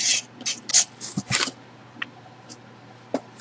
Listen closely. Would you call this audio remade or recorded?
recorded